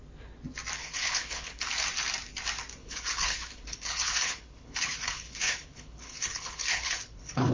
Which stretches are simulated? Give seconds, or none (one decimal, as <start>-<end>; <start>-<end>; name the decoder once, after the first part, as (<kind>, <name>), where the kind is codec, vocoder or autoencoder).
0.8-1.6 (codec, HILCodec); 2.8-7.5